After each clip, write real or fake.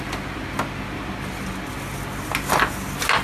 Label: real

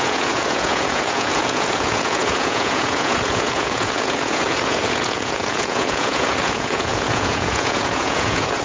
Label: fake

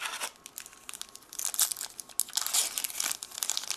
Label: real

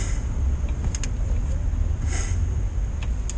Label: real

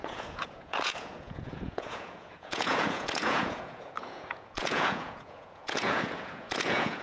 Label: fake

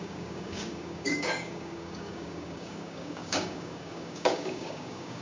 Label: fake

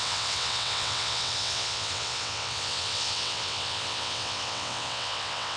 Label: fake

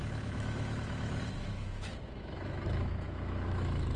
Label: fake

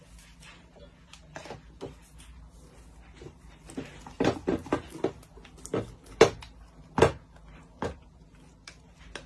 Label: real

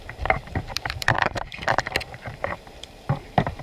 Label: fake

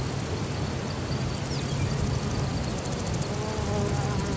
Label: real